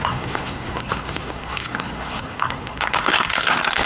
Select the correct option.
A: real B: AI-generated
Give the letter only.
B